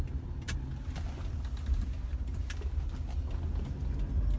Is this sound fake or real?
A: real